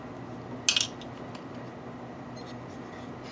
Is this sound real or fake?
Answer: real